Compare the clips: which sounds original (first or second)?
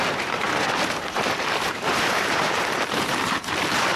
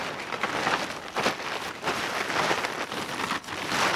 second